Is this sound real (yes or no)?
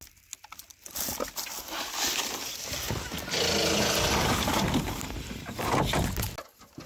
yes